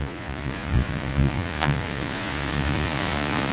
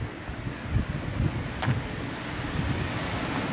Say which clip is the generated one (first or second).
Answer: first